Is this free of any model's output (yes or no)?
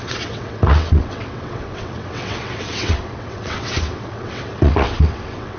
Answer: no